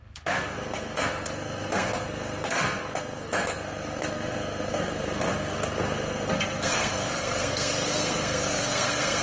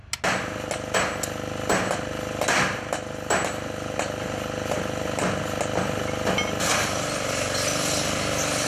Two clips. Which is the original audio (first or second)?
second